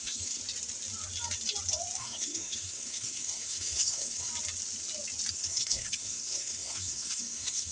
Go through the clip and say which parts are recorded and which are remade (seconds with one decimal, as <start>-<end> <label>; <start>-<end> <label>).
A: 0.0-0.4 remade; 0.4-2.0 recorded; 2.0-4.3 remade; 4.3-5.3 recorded; 5.3-7.7 remade